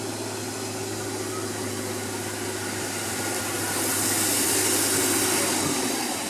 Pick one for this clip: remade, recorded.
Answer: recorded